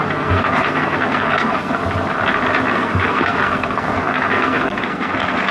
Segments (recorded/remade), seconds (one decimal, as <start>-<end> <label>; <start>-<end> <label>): 0.0-1.8 remade; 1.8-2.7 recorded; 2.7-5.5 remade